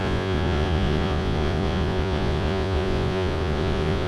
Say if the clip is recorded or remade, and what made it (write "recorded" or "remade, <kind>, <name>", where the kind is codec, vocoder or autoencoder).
remade, vocoder, Vocos